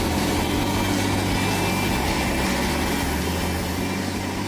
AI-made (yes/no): no